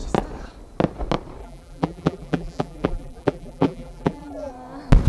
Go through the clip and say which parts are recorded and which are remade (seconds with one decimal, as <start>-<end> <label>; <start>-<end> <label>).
0.0-1.4 recorded; 1.4-4.5 remade; 4.5-5.1 recorded